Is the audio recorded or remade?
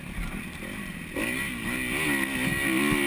recorded